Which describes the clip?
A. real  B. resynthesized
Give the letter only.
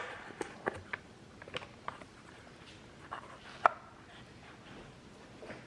A